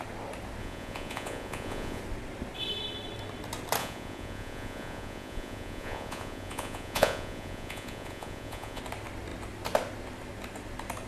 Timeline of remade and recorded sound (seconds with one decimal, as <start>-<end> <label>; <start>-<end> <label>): 0.0-0.6 recorded; 0.6-2.0 remade; 2.0-3.8 recorded; 3.8-8.8 remade; 8.8-11.1 recorded